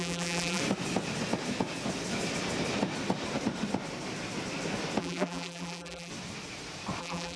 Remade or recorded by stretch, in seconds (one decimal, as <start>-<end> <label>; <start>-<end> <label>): 0.0-0.6 remade; 0.6-5.0 recorded; 5.0-6.1 remade; 6.1-7.0 recorded; 7.0-7.4 remade